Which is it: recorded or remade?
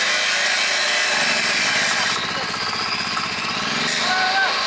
recorded